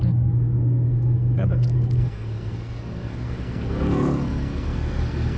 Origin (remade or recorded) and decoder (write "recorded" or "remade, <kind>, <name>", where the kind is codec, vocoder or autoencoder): remade, codec, SNAC